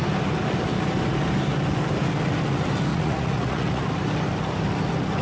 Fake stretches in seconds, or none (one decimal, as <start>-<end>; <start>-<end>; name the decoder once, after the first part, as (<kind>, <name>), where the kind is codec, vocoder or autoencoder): 2.9-3.8 (vocoder, Vocos)